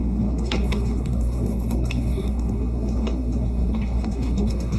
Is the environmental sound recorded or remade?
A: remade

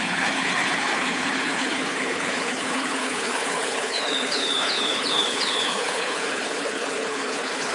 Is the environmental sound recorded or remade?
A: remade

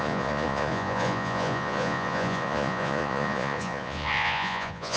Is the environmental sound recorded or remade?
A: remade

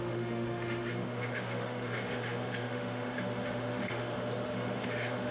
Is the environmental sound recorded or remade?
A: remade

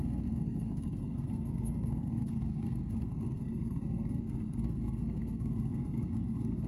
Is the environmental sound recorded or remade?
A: remade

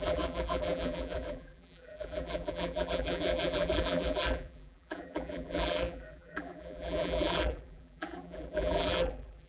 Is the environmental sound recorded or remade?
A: remade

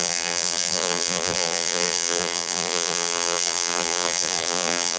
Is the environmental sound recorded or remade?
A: remade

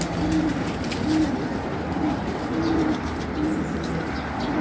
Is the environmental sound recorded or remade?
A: recorded